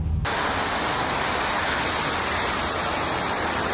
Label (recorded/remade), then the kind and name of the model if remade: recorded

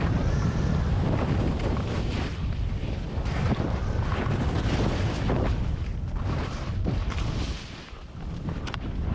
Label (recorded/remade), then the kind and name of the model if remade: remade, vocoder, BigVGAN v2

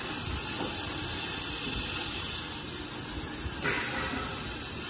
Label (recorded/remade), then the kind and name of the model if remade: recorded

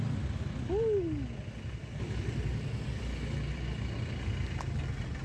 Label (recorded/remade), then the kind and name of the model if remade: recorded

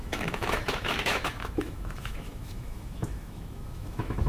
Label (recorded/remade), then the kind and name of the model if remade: remade, autoencoder, DAC-VAE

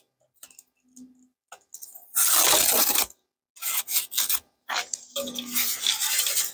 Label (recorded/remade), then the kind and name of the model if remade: recorded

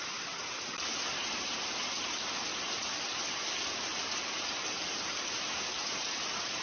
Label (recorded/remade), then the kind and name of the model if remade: recorded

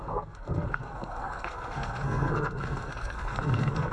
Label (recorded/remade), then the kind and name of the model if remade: remade, codec, SNAC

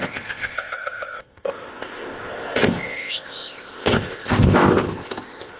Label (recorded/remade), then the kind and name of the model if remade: remade, codec, ZipCodec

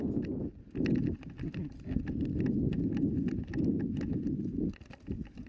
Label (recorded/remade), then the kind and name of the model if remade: recorded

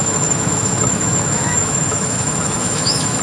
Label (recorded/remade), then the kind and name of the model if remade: remade, autoencoder, DAC-VAE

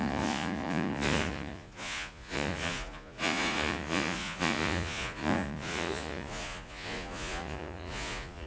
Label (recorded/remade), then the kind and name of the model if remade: remade, vocoder, Vocos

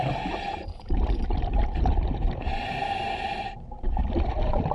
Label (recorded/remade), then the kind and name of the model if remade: remade, vocoder, BigVGAN v2